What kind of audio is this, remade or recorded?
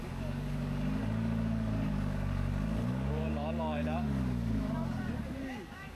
remade